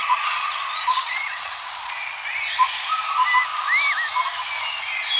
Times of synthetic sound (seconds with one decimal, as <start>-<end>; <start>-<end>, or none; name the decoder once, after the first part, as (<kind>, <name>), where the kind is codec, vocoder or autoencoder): 0.0-2.1 (vocoder, Vocos)